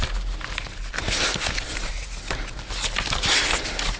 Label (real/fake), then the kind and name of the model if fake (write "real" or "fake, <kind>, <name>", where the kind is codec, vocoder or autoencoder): real